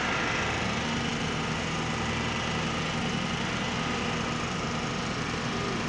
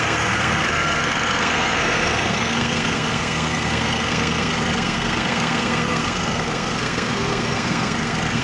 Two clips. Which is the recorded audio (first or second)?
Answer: first